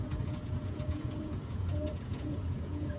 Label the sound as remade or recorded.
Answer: remade